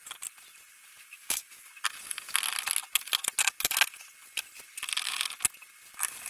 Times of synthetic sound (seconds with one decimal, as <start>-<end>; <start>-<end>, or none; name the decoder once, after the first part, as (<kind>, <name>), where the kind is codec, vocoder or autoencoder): 1.1-1.7 (autoencoder, DAC-VAE)